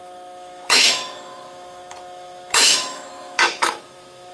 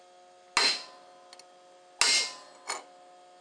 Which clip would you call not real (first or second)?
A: first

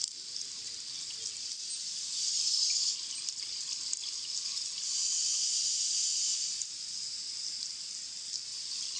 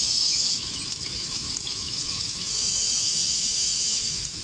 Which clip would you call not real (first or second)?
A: second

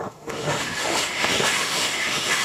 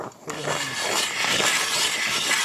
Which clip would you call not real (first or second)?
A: first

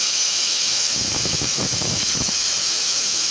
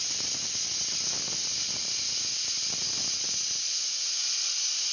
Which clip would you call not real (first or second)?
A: first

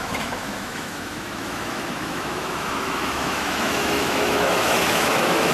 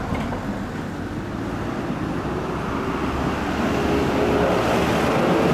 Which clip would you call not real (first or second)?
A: first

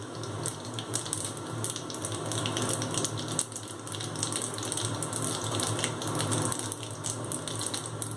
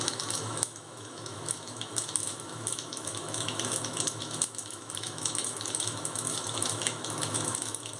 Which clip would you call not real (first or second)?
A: second